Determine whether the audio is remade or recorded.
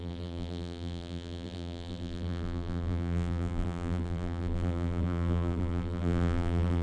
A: remade